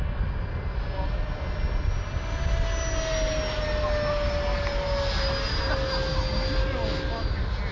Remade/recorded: recorded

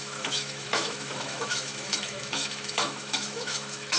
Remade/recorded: remade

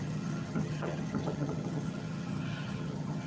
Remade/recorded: remade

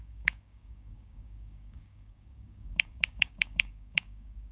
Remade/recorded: remade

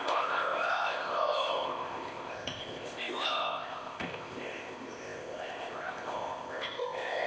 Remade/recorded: remade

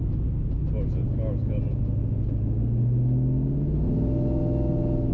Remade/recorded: recorded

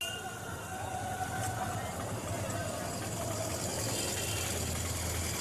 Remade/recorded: recorded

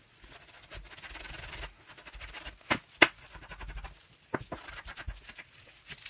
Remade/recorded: recorded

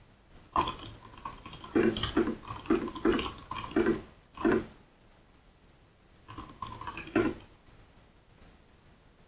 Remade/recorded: recorded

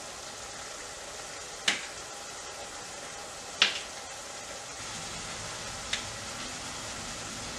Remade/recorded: recorded